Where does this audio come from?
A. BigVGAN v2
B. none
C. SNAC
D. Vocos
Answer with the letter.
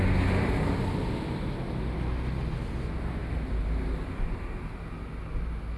B